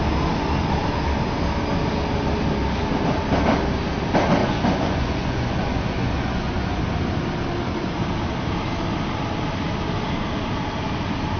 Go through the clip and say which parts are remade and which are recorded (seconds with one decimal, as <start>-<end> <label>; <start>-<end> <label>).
0.0-4.4 recorded; 4.4-6.8 remade; 6.8-11.4 recorded